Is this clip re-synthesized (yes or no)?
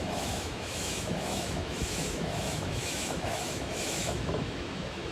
yes